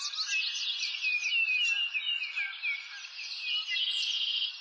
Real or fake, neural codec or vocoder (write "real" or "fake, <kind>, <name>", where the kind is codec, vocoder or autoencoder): real